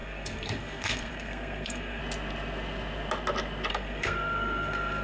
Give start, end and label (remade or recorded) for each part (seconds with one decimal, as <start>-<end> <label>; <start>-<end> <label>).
0.0-2.0 remade; 2.0-3.7 recorded; 3.7-5.0 remade